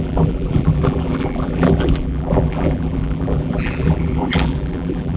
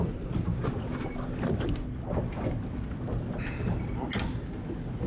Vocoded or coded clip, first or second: first